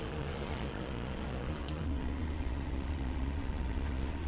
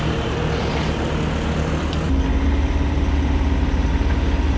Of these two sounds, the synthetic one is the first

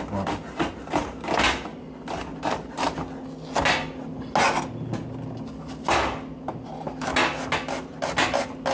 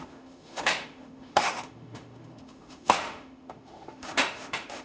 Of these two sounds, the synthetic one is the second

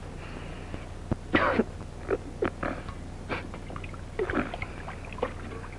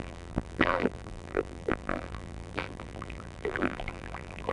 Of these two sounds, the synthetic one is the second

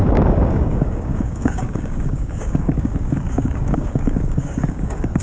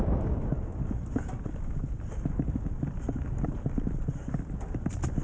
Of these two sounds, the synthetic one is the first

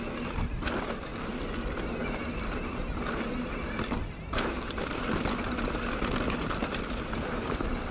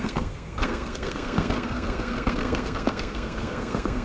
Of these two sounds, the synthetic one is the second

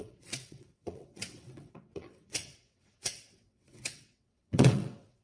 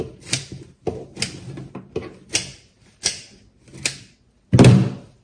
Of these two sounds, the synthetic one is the first